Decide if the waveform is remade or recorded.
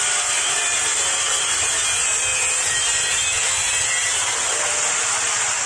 recorded